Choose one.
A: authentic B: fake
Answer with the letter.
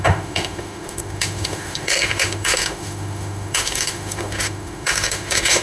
B